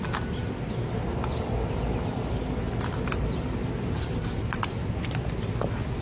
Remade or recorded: recorded